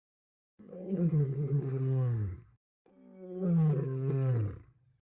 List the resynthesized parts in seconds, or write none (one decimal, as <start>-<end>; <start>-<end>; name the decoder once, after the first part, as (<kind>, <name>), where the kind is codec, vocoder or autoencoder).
0.0-2.9 (codec, SNAC)

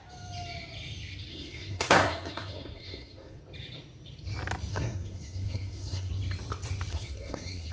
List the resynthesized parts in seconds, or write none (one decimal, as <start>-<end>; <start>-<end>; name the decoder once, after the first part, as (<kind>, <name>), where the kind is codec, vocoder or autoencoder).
1.3-3.4 (codec, SNAC); 4.7-6.1; 6.9-7.7